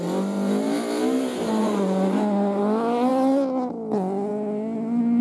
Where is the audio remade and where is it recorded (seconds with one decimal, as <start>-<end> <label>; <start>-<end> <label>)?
0.0-1.6 recorded; 1.6-2.6 remade; 2.6-5.2 recorded